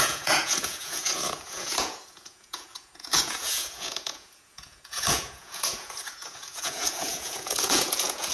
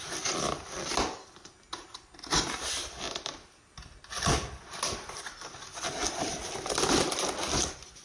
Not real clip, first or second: first